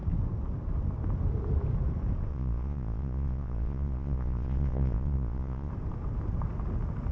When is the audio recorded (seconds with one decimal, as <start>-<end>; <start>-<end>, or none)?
0.0-2.3; 5.7-7.1